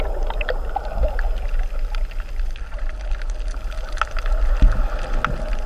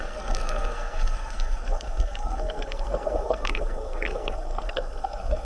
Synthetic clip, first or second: second